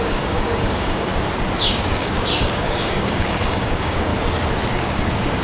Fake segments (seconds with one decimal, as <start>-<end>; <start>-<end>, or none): 0.0-1.1; 1.7-4.1; 4.7-5.4